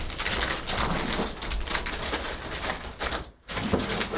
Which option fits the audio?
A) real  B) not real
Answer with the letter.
A